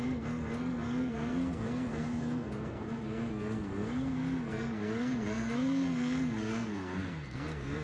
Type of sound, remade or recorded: remade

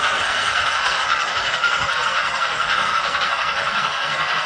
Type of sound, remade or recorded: remade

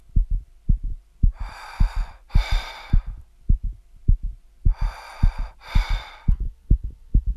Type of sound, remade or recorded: recorded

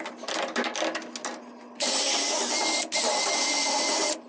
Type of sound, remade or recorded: recorded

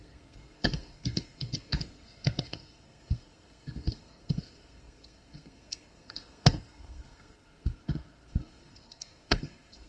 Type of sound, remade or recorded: remade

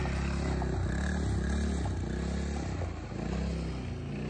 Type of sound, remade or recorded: recorded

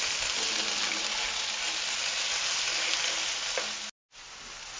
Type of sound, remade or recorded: recorded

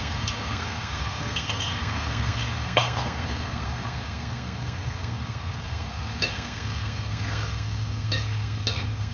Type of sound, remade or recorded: remade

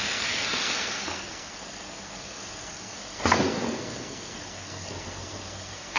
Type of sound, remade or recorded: remade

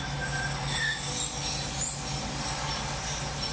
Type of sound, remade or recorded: recorded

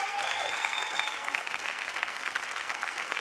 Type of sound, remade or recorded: remade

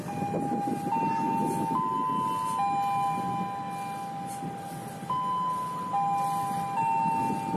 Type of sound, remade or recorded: recorded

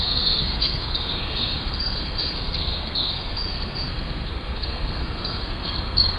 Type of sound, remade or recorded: remade